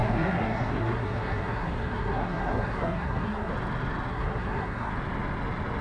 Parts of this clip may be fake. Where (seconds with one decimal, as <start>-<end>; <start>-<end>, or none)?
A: 0.0-3.5; 4.1-4.9